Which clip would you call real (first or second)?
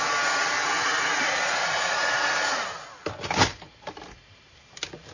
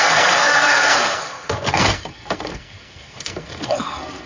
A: first